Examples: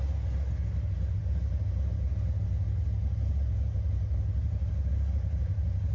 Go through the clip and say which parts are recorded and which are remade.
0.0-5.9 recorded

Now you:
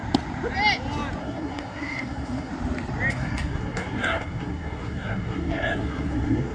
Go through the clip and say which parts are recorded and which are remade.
0.0-1.2 recorded; 1.2-2.5 remade; 2.5-3.1 recorded; 3.1-6.5 remade

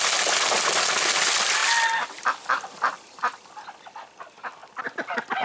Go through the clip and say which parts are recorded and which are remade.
0.0-5.4 recorded